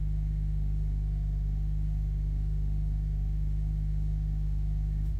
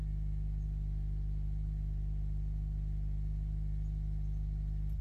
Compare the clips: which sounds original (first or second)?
second